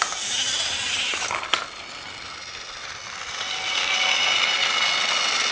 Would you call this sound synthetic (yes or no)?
no